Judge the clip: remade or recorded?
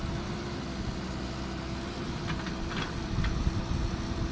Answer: recorded